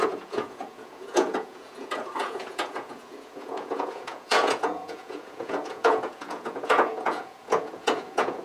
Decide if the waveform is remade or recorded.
remade